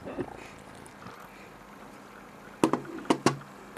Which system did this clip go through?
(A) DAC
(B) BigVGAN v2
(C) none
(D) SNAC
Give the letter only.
C